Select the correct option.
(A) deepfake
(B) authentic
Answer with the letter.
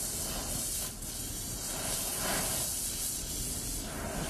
B